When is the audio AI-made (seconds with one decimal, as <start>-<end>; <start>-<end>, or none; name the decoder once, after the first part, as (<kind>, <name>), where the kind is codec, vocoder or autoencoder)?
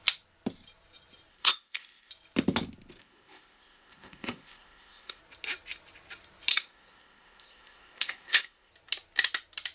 1.3-2.1 (codec, ZipCodec); 3.0-5.2; 6.5-8.7